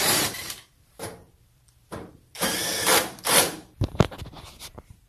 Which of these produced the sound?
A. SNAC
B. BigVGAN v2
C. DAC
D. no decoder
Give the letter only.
B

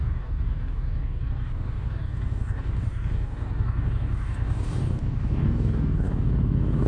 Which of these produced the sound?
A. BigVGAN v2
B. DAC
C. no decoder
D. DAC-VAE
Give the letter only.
B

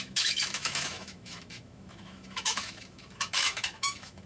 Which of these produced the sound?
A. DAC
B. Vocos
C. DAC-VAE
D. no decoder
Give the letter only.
C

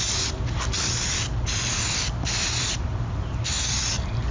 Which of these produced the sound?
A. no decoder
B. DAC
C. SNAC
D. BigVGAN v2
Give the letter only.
D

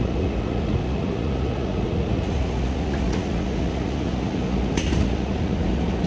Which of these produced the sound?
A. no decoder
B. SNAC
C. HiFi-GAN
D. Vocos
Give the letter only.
D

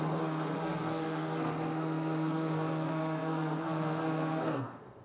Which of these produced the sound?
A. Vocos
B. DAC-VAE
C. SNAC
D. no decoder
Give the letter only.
C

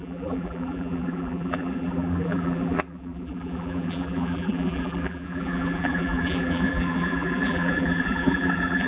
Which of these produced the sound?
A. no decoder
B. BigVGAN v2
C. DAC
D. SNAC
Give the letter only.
B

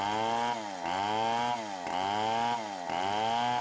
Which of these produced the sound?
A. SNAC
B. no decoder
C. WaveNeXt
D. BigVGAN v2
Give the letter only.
B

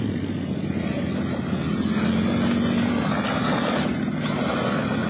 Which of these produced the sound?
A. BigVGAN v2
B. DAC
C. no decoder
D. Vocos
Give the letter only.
C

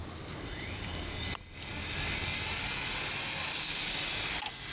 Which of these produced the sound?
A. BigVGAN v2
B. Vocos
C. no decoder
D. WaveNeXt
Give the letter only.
C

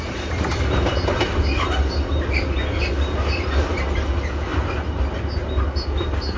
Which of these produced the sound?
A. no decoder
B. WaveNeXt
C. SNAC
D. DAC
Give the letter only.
A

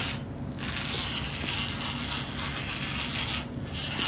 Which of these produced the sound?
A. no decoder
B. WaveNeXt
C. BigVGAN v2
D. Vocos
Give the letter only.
A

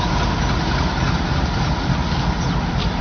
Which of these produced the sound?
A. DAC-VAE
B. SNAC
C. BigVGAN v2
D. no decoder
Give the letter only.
D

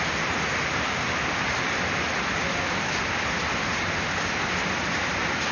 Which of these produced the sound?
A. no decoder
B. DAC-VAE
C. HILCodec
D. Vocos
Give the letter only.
A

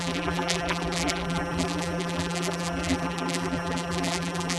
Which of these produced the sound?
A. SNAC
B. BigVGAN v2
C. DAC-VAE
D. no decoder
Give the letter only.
B